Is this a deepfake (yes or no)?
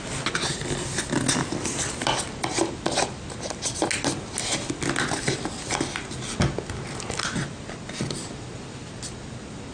no